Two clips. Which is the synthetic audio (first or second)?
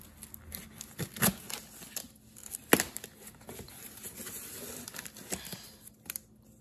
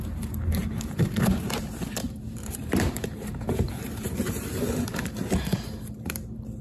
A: second